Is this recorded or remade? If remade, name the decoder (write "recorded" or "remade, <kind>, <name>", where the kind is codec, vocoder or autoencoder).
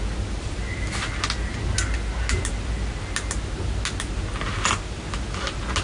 recorded